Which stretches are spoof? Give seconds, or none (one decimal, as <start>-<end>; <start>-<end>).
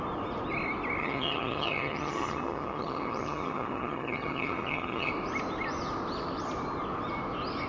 1.0-5.1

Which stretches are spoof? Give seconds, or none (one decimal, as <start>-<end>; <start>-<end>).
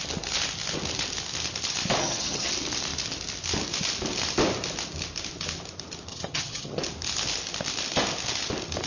2.0-2.5; 6.1-6.8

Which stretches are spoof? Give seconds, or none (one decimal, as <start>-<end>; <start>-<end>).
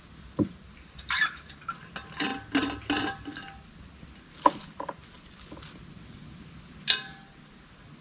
none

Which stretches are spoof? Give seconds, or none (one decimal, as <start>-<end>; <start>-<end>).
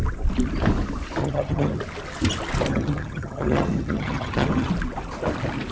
1.2-1.7; 2.7-4.7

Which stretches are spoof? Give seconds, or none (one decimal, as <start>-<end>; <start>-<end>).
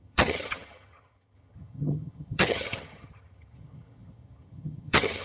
0.0-5.2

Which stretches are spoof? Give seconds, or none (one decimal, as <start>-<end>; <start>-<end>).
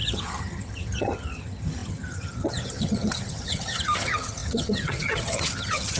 0.0-6.0